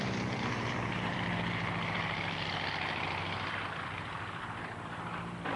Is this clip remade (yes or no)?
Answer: yes